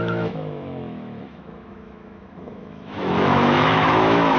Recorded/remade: remade